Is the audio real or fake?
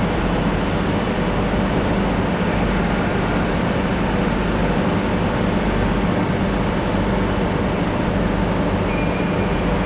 real